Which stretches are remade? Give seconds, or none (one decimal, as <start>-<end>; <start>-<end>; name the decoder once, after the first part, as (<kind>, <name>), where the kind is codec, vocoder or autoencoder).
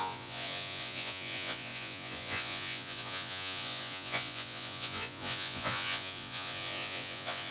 0.0-7.5 (vocoder, Vocos)